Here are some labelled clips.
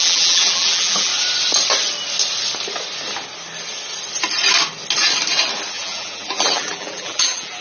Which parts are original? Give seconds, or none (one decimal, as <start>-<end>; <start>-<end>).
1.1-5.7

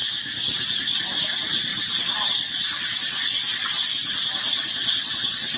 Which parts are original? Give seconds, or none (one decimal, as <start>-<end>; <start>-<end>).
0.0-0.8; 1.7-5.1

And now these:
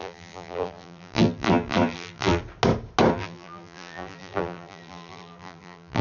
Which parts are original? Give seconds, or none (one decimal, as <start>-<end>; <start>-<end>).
2.4-3.1

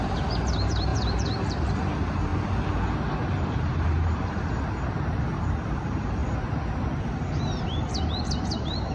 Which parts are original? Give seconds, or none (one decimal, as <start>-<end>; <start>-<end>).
2.3-3.3; 6.2-8.2

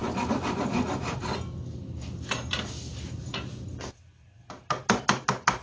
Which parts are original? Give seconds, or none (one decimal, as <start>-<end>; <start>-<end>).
1.2-5.6

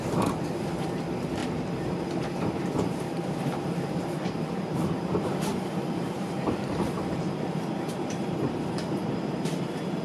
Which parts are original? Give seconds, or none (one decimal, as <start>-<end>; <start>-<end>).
1.4-2.3